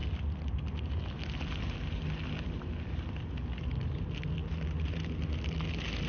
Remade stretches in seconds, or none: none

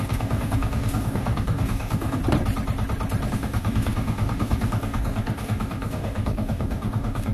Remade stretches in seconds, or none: 0.0-2.2 (codec, DAC); 3.3-7.3

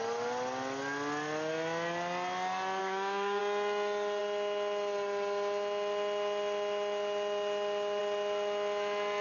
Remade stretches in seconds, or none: 2.8-3.4 (codec, DAC)

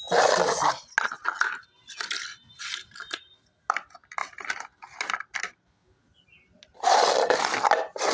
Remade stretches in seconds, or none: none

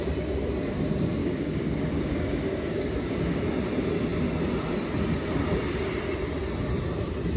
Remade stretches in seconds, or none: 1.2-3.4 (codec, DAC)